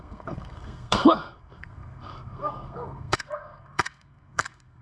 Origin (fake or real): fake